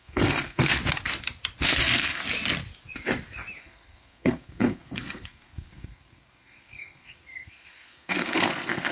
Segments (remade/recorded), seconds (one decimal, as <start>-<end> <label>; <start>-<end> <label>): 0.0-0.8 remade; 0.8-1.7 recorded; 1.7-2.2 remade; 2.2-3.6 recorded; 3.6-8.9 remade